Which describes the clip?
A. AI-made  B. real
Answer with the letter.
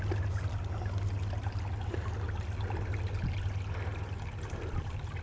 B